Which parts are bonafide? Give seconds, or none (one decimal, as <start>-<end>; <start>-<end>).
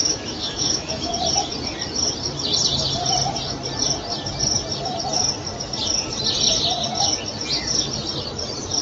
1.1-8.8